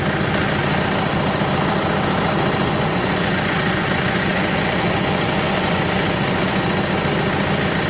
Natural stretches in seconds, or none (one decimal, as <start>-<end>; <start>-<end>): 0.0-2.6; 6.8-7.9